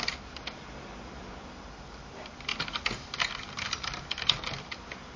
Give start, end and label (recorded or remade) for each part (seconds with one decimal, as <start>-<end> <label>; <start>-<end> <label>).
0.0-5.2 recorded